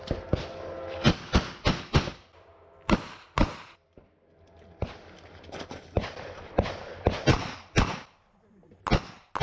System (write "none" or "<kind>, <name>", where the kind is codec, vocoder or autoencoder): none